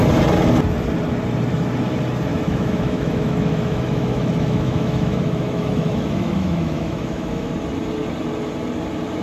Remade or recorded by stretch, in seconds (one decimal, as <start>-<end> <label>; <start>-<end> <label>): 0.0-2.3 recorded; 2.3-7.5 remade; 7.5-9.2 recorded